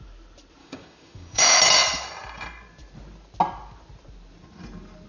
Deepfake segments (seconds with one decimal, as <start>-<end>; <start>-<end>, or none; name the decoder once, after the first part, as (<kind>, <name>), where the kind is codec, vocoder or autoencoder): 0.6-1.4 (codec, DAC)